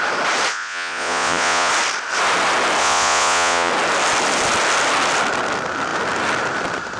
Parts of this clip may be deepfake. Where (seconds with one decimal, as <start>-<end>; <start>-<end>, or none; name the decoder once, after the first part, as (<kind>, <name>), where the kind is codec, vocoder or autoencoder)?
0.5-1.7 (vocoder, Vocos); 2.8-3.7